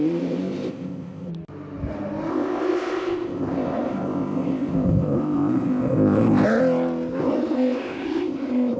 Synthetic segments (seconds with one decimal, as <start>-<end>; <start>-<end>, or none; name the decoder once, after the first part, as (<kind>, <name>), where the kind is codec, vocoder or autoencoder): 0.0-1.3 (codec, ZipCodec); 2.3-6.6; 7.2-8.8